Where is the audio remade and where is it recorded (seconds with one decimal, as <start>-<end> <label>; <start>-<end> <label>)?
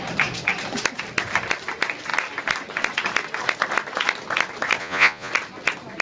0.0-4.8 recorded; 4.8-5.3 remade; 5.3-6.0 recorded